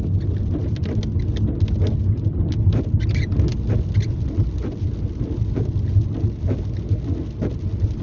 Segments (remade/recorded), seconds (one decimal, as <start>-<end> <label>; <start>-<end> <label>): 0.0-8.0 recorded